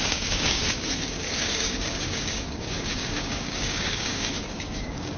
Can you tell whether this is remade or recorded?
remade